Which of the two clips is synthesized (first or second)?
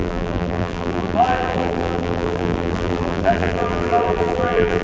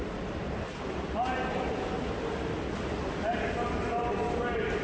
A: first